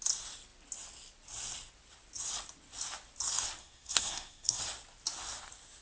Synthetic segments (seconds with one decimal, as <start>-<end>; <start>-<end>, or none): 3.6-4.6